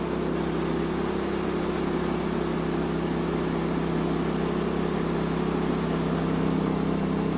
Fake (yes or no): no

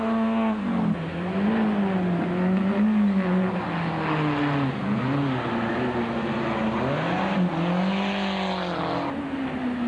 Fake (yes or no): no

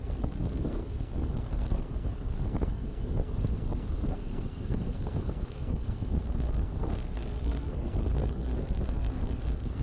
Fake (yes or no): yes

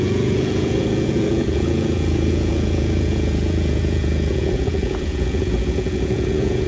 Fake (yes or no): yes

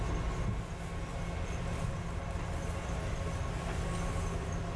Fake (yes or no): no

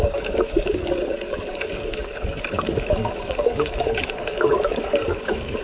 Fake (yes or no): yes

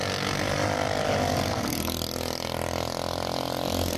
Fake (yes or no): no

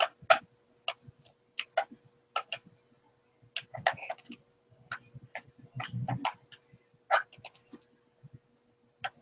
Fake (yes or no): no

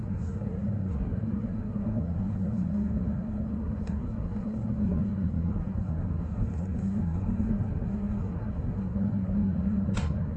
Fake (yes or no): yes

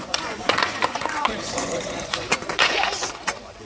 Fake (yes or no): yes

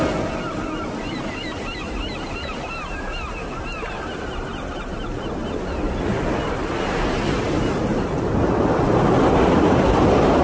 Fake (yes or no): no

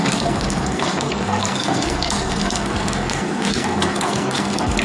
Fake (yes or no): yes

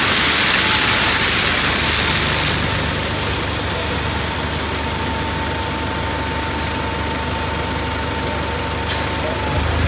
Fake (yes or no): no